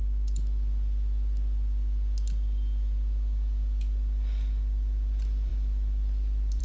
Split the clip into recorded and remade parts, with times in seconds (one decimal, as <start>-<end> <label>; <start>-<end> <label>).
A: 0.0-6.6 recorded